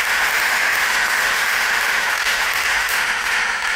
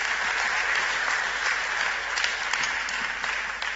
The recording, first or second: second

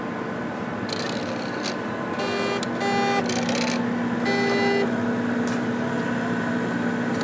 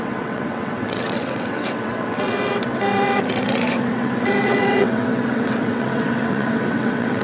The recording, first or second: first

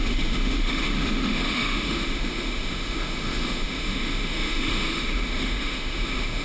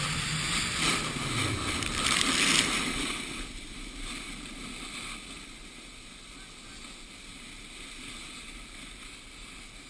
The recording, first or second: second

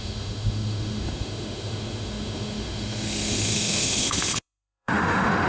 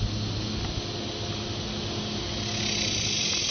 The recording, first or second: second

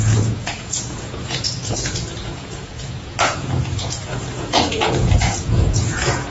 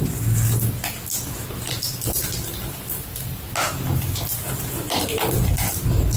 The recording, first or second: second